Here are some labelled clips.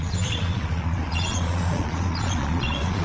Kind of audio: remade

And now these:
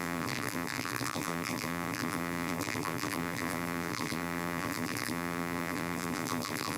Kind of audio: remade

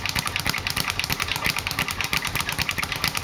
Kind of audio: recorded